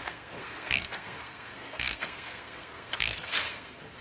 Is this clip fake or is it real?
fake